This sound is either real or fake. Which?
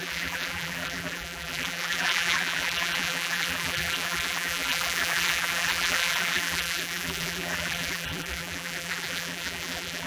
fake